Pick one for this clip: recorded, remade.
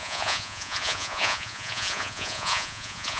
remade